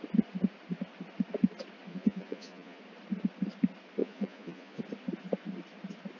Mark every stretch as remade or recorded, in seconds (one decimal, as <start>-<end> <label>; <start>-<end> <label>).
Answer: 0.0-1.9 recorded; 1.9-2.8 remade; 2.8-4.0 recorded; 4.0-4.8 remade; 4.8-6.2 recorded